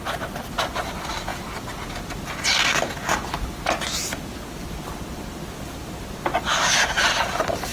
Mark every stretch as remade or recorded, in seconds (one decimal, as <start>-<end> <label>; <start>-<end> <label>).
0.0-7.7 recorded